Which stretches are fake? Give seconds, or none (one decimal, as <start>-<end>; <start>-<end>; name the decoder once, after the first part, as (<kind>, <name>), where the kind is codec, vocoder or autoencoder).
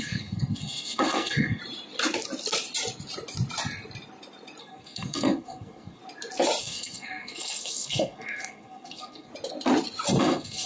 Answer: 0.0-1.6 (codec, SNAC); 4.6-6.0; 6.6-9.3; 10.2-10.7